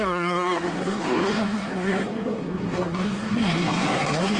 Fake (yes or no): yes